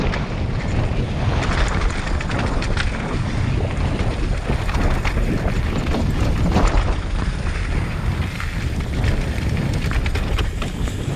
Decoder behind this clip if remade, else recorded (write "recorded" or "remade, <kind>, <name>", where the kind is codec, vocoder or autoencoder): recorded